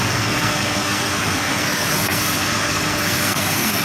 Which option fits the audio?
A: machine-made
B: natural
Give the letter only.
A